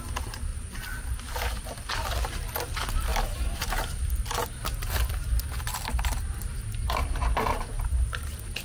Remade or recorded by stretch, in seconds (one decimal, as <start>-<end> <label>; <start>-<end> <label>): 0.0-0.5 recorded; 0.5-1.1 remade; 1.1-8.6 recorded